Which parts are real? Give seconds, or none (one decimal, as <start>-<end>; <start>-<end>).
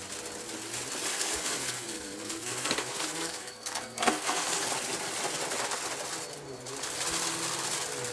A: 0.0-1.1; 4.7-8.1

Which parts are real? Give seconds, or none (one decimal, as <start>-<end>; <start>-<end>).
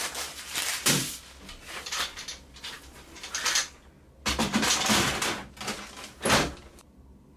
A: 0.0-7.4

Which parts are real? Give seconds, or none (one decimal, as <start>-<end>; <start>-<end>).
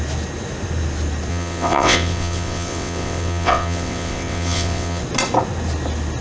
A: 0.0-1.3; 5.0-6.2